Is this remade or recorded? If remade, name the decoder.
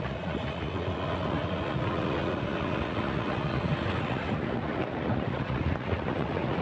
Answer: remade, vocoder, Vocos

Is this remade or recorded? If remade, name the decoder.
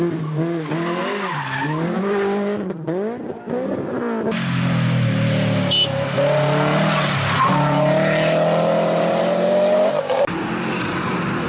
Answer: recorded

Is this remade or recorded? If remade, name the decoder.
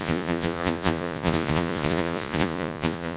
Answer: remade, vocoder, Vocos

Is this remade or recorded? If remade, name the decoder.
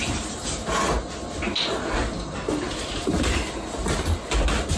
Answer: recorded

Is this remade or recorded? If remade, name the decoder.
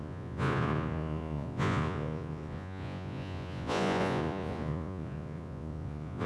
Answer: remade, vocoder, Vocos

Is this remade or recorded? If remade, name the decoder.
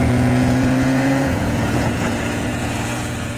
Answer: remade, vocoder, Vocos